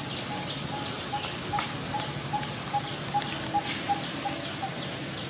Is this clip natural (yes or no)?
yes